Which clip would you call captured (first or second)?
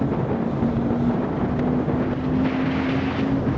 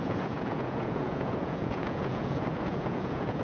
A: first